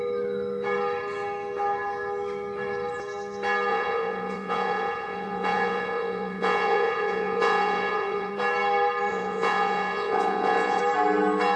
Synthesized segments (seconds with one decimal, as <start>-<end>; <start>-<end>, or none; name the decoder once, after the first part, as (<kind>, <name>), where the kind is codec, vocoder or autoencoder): 3.7-8.3 (vocoder, Vocos); 9.1-10.8